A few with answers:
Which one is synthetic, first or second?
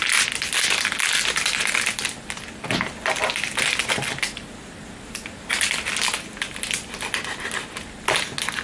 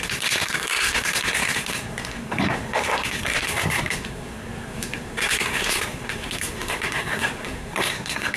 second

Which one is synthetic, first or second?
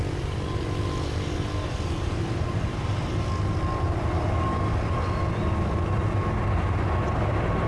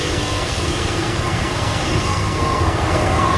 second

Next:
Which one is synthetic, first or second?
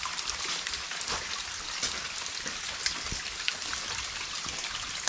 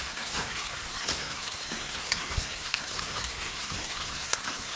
second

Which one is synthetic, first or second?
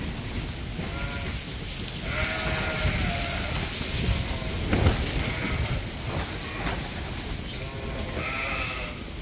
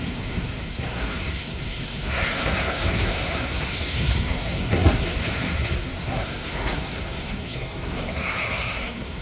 second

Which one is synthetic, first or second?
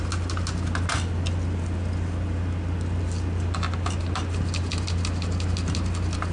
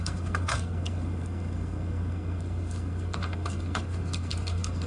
second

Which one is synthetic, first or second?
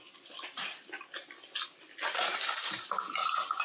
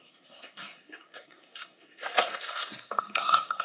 second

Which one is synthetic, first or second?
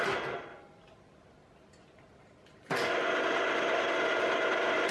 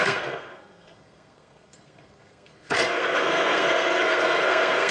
second